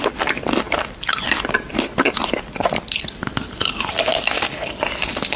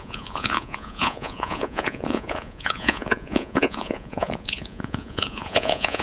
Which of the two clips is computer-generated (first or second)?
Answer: second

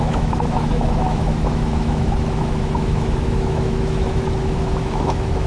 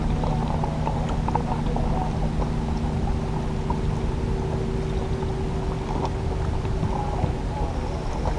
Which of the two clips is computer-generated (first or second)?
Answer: first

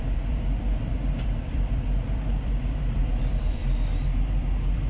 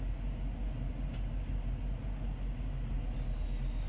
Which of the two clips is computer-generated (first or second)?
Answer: first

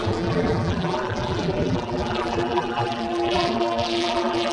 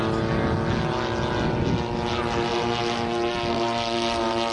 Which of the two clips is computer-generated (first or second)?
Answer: first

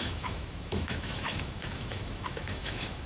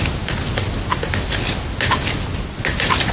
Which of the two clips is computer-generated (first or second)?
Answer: first